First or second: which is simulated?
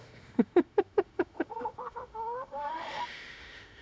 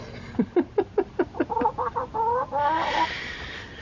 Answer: first